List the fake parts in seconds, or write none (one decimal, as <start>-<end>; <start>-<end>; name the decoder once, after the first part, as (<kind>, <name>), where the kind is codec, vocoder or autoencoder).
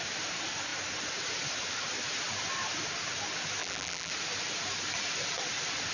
3.6-4.1 (vocoder, BigVGAN v2)